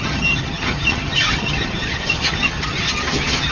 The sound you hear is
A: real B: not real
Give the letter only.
B